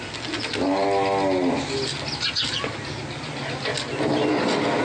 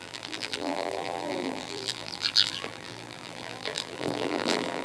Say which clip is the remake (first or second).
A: second